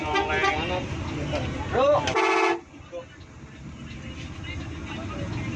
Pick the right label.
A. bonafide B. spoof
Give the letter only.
A